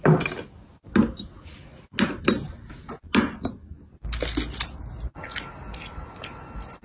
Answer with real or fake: real